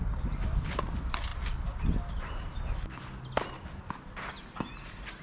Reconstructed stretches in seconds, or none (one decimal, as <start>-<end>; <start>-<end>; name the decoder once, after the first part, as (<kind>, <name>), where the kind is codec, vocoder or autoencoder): none